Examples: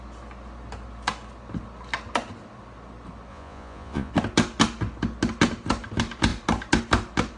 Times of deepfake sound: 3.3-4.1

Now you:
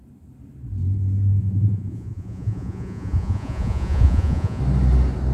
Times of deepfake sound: 1.4-4.6

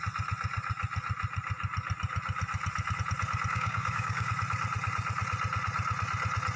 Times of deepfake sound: 3.5-4.3

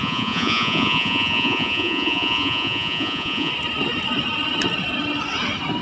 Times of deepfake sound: 0.0-3.5

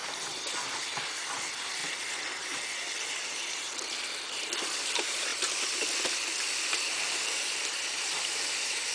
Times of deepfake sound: 1.2-1.8; 3.1-5.3; 8.0-8.9